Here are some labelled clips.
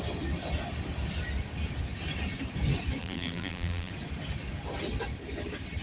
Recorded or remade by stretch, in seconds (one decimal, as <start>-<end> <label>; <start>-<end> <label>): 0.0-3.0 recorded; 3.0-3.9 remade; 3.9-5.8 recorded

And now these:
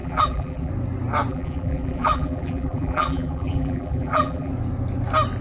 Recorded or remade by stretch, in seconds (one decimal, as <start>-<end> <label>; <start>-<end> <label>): 0.0-0.7 remade; 0.7-1.3 recorded; 1.3-4.5 remade; 4.5-5.4 recorded

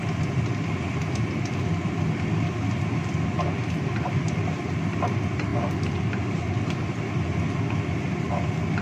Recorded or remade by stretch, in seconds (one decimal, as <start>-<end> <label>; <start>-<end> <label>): 0.0-8.8 recorded

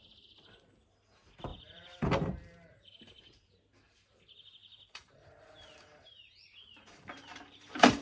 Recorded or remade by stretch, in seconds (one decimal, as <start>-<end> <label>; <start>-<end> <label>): 0.0-1.5 recorded; 1.5-3.6 remade; 3.6-4.6 recorded; 4.6-8.0 remade